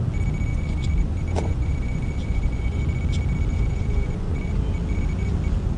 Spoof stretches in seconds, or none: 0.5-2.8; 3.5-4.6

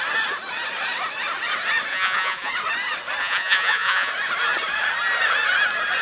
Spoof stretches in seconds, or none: 1.9-2.5; 3.2-4.1

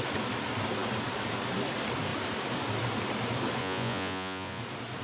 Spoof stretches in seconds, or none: 3.6-4.6

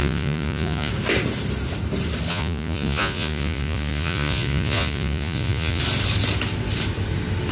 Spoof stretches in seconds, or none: 0.0-0.9; 2.3-5.8

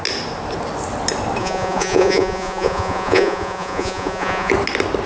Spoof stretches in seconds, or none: 1.4-4.5

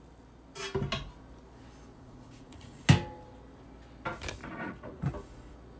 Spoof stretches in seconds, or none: 1.9-2.8; 4.4-5.1